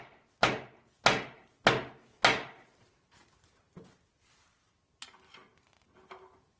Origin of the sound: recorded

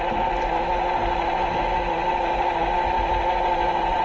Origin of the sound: recorded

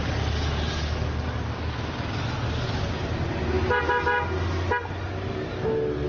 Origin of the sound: recorded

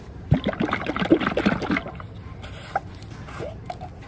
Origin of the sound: recorded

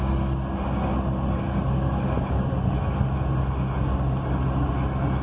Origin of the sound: recorded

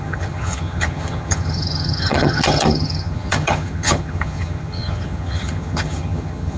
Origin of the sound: remade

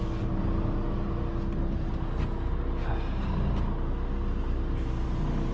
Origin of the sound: recorded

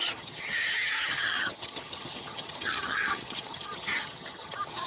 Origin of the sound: remade